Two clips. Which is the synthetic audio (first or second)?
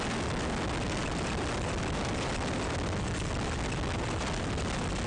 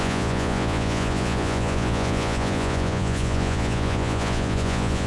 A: second